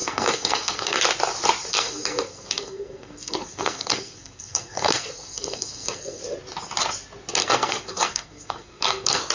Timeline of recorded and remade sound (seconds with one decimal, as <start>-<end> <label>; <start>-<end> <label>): 0.0-1.0 remade; 1.0-1.7 recorded; 1.7-6.2 remade; 6.2-7.4 recorded; 7.4-9.3 remade